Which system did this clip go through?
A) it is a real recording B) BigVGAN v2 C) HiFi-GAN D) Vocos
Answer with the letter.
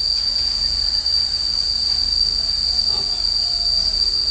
A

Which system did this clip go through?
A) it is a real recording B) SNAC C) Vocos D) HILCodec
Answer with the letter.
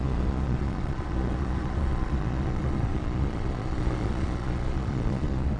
C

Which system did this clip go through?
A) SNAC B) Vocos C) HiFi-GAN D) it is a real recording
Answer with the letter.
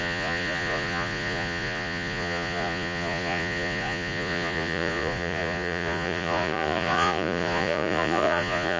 B